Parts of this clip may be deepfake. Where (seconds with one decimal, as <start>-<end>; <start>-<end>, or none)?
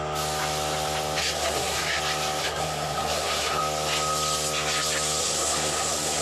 1.2-2.0; 2.4-3.6; 5.2-6.2